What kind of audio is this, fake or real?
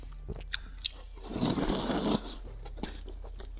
real